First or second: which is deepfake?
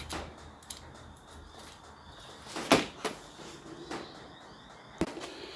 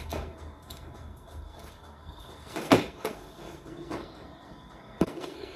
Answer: second